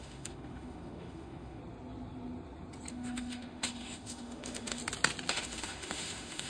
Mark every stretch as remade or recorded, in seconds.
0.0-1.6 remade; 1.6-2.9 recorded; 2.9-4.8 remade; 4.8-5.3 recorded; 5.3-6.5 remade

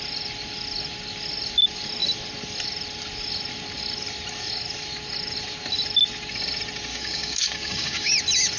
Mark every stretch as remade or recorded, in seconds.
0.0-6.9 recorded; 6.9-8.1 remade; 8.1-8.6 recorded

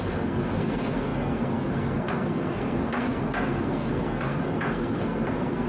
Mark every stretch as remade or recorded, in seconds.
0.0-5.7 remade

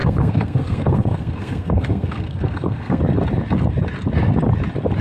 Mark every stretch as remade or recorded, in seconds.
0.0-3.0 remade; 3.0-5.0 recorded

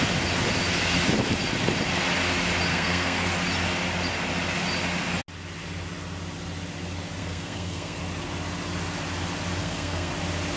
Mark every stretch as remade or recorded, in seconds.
0.0-2.7 recorded; 2.7-3.3 remade; 3.3-7.2 recorded; 7.2-8.0 remade; 8.0-9.6 recorded; 9.6-10.1 remade; 10.1-10.6 recorded

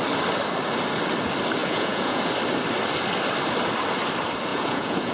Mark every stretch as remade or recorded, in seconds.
0.0-1.6 recorded; 1.6-2.3 remade; 2.3-4.5 recorded; 4.5-5.1 remade

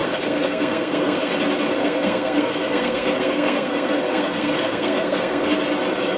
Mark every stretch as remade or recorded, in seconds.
0.0-1.3 remade; 1.3-1.8 recorded; 1.8-5.5 remade; 5.5-6.2 recorded

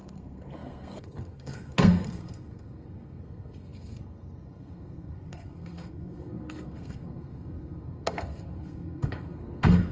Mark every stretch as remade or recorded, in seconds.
0.0-9.9 remade